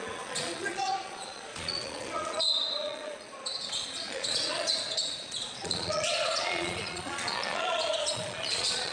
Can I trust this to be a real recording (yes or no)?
no